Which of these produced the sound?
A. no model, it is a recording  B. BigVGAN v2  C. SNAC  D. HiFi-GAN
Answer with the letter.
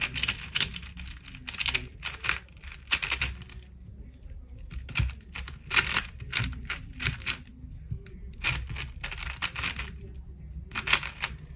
A